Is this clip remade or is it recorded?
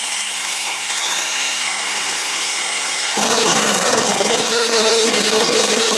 remade